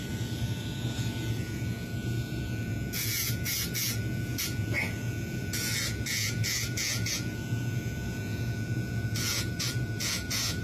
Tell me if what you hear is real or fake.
fake